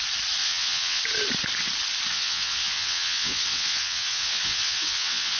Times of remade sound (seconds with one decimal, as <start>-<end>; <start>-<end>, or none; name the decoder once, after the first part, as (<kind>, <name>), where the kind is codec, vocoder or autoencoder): 0.4-1.0 (vocoder, WaveNeXt); 2.1-5.4